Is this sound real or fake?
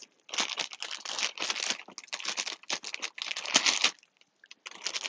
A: real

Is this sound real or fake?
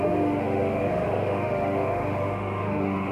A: fake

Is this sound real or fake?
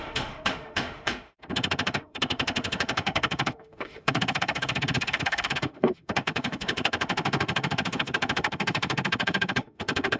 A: fake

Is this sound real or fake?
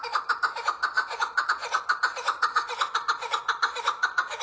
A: real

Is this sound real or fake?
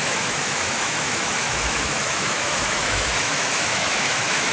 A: fake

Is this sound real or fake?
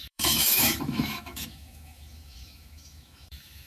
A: fake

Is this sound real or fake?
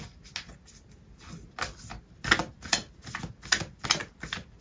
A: real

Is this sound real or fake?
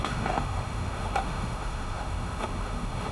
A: fake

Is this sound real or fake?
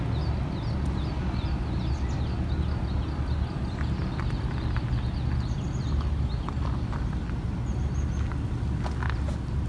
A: real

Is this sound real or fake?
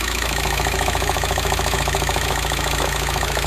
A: fake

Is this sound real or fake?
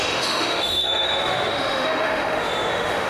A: fake